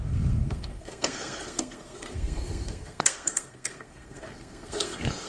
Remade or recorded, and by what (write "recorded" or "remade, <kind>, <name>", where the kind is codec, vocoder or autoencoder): remade, codec, SNAC